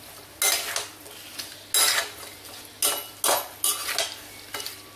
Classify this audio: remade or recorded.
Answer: recorded